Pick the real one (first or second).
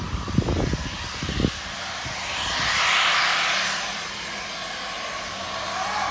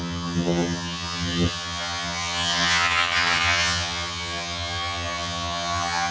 first